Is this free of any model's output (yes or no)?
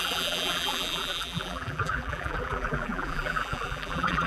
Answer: no